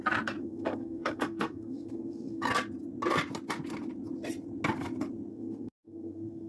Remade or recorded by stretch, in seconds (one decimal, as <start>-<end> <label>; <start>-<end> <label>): 0.0-0.4 recorded; 0.4-2.5 remade; 2.5-5.3 recorded; 5.3-6.5 remade